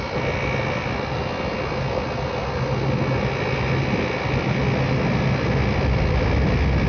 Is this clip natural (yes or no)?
yes